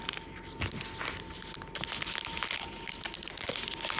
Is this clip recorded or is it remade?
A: recorded